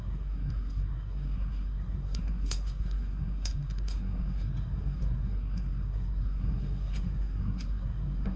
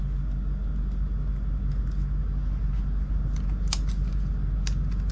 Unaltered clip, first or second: second